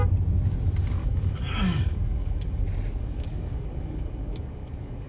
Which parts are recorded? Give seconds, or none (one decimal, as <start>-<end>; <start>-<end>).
0.0-1.0; 2.6-3.0